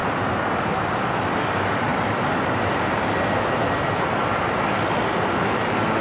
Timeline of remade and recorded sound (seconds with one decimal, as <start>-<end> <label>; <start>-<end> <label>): 0.0-1.9 recorded; 1.9-5.5 remade; 5.5-6.0 recorded